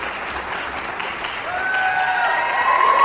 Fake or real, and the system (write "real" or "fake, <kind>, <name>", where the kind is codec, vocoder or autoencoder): real